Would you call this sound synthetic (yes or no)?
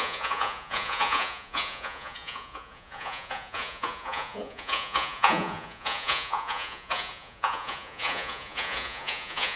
yes